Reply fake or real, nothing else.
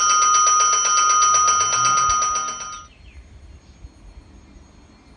real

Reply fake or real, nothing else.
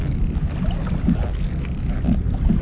real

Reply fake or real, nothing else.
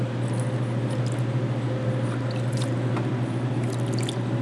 real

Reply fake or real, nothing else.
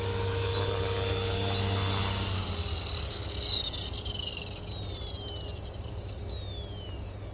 real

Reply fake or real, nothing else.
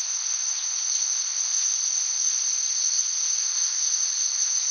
fake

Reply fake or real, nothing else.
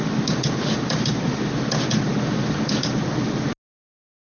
real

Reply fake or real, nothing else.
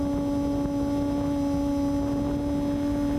real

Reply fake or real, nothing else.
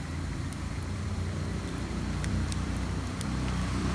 fake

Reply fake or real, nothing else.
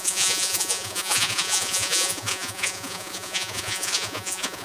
fake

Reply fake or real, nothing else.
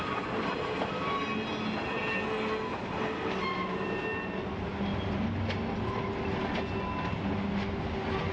real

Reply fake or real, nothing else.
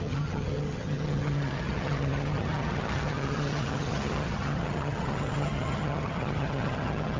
fake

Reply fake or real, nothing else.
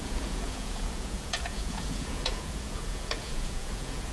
fake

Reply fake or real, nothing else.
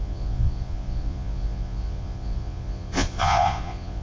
fake